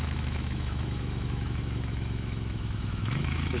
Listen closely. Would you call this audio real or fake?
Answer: fake